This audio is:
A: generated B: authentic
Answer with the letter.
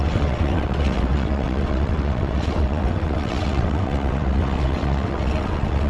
A